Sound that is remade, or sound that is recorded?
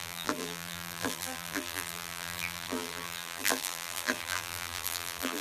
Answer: remade